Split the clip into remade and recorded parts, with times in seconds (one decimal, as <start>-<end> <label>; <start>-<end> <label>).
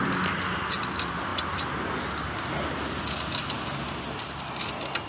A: 0.0-5.1 recorded